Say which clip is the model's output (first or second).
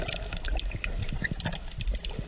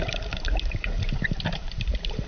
second